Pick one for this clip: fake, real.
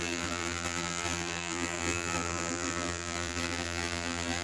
fake